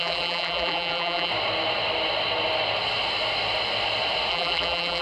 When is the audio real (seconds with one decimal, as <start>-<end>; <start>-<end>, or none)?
1.3-4.3